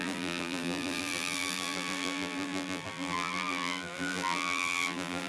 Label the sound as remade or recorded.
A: remade